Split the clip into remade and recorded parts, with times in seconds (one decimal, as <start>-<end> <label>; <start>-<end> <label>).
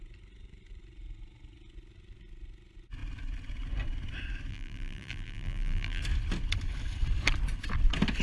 0.0-4.5 recorded; 4.5-6.0 remade; 6.0-8.2 recorded